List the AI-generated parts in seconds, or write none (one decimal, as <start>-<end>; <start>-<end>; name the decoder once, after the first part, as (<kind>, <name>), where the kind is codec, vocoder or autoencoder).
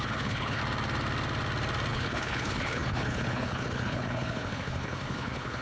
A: 0.0-0.6 (codec, HILCodec); 1.9-5.6